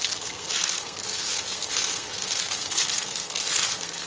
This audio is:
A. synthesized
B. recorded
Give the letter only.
A